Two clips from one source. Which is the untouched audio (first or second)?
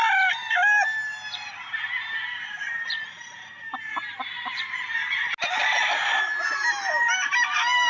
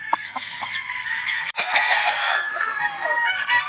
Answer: first